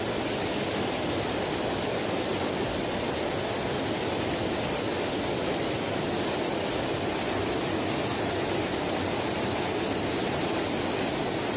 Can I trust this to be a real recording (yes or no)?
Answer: yes